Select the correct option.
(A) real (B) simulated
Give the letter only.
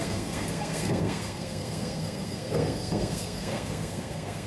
B